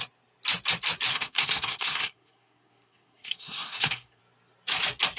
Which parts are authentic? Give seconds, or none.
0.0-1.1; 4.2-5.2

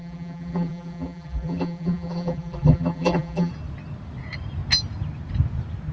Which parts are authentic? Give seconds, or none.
3.5-5.9

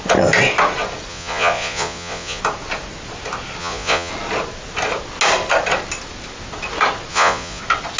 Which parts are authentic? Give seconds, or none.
0.0-1.1; 2.4-3.6; 4.1-7.1; 7.6-8.0